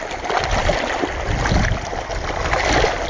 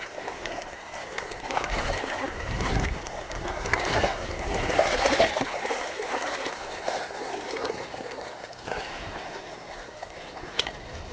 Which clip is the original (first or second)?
first